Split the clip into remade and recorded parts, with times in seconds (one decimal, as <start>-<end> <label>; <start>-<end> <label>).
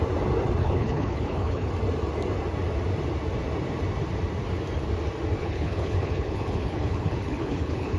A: 0.0-0.6 recorded; 0.6-1.7 remade; 1.7-5.4 recorded; 5.4-8.0 remade